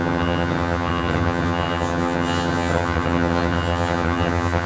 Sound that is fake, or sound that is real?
fake